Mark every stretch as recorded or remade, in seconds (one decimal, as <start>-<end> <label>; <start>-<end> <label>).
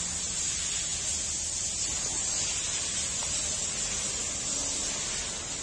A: 0.0-5.6 recorded